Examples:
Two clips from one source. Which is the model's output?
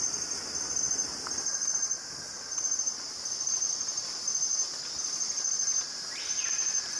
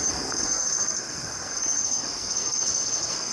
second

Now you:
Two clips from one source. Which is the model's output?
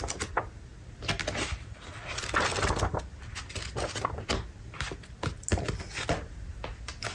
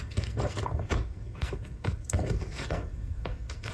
second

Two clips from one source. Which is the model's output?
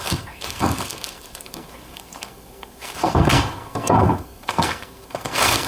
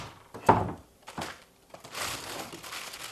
first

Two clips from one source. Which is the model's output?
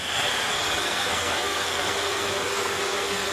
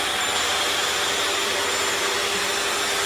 first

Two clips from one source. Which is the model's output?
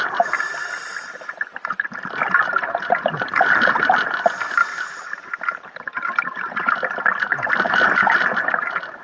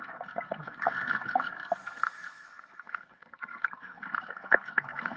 second